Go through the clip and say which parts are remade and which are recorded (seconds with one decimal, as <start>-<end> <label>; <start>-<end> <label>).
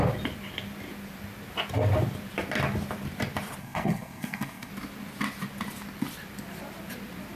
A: 0.0-3.6 recorded; 3.6-4.7 remade; 4.7-7.4 recorded